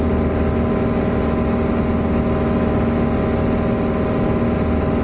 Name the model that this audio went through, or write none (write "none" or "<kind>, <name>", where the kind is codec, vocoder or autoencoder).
none